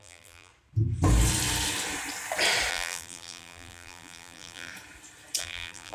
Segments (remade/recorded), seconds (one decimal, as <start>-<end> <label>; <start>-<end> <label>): 0.0-0.5 remade; 0.5-2.7 recorded; 2.7-4.7 remade; 4.7-5.4 recorded; 5.4-5.9 remade